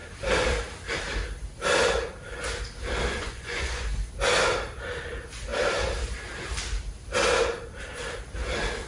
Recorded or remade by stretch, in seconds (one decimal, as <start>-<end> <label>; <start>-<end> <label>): 0.0-3.1 recorded; 3.1-3.9 remade; 3.9-8.9 recorded